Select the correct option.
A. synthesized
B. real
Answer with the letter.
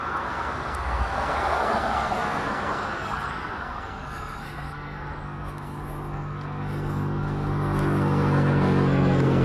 A